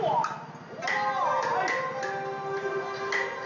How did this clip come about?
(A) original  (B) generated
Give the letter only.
A